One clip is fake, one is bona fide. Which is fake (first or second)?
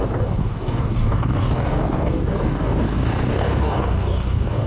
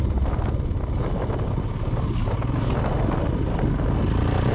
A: first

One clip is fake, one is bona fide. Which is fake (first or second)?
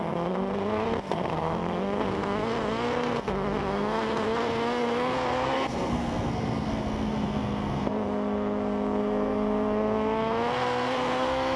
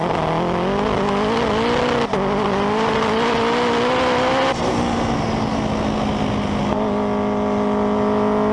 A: first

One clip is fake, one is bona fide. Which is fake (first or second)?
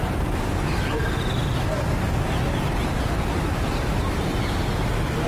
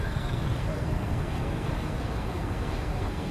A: second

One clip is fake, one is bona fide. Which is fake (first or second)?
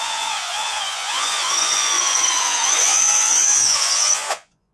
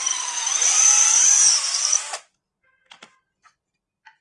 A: first